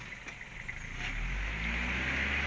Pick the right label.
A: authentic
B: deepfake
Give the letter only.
A